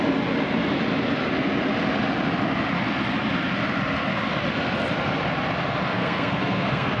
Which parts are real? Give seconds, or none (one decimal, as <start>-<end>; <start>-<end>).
0.0-5.9